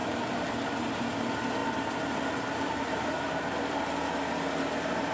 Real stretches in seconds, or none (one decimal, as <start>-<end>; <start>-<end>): 1.1-1.6; 3.3-5.1